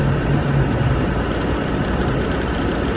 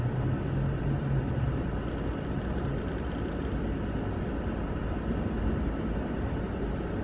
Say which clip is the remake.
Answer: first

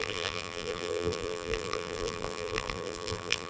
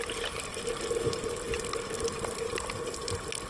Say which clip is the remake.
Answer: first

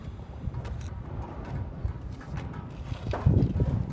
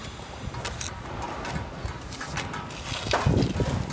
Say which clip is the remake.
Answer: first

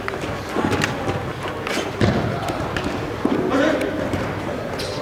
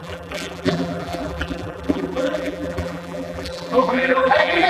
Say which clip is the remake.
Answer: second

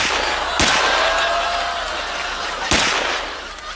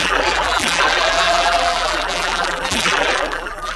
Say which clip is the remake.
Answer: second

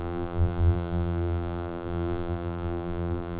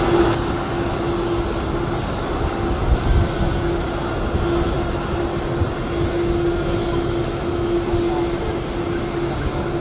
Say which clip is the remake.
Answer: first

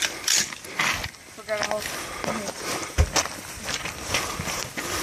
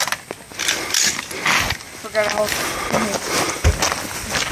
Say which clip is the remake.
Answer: first